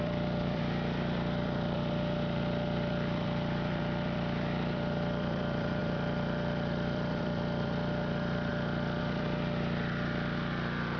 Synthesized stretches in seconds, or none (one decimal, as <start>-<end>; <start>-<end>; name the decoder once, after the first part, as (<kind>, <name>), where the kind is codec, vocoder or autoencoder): 0.0-8.5 (vocoder, BigVGAN v2); 9.0-11.0